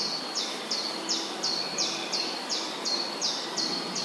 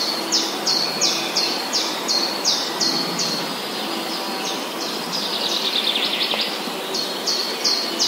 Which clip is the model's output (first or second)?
first